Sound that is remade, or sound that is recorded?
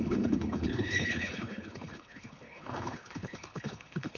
remade